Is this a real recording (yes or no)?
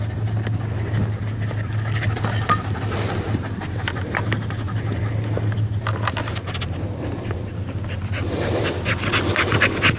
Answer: yes